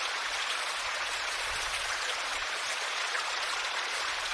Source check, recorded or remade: remade